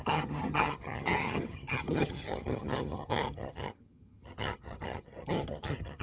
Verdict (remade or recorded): remade